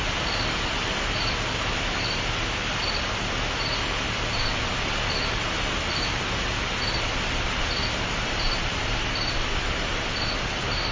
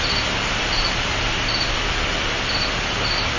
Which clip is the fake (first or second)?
first